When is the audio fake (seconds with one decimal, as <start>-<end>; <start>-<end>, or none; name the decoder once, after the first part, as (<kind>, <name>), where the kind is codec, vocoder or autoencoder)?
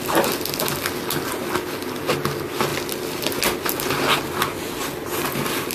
none